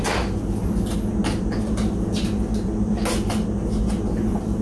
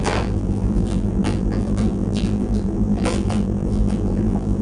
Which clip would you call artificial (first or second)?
second